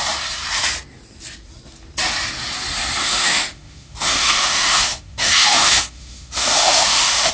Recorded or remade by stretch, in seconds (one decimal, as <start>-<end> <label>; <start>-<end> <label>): 0.0-3.0 recorded; 3.0-7.3 remade